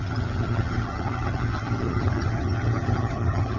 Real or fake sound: fake